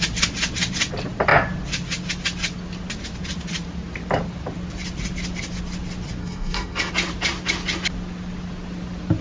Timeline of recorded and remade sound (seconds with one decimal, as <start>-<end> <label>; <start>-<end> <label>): 0.0-6.2 recorded; 6.2-6.9 remade; 6.9-9.2 recorded